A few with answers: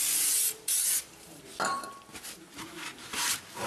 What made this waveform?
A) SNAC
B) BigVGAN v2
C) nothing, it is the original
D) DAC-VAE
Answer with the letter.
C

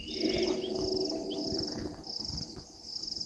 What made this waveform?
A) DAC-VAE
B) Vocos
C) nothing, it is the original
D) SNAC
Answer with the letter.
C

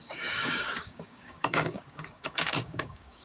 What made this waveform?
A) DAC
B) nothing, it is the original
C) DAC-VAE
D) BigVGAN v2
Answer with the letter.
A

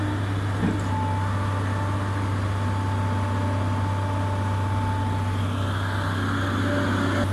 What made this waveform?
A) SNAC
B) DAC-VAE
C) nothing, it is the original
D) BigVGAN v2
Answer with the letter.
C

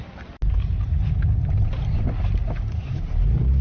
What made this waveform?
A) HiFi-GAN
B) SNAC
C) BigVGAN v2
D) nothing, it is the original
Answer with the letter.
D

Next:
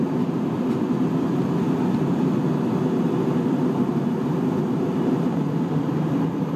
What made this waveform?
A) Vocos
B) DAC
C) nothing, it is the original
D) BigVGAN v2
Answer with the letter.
C